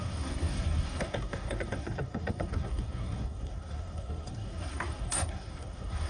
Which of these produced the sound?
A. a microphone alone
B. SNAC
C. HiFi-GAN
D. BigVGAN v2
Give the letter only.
B